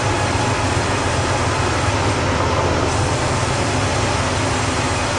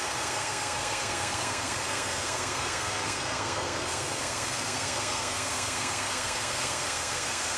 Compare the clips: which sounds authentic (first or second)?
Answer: first